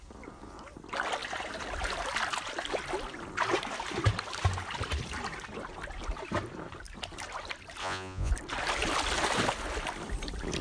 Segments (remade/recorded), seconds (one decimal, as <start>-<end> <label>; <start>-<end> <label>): 0.0-7.8 recorded; 7.8-8.3 remade; 8.3-10.6 recorded